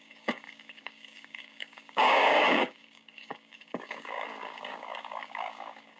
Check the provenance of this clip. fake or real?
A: fake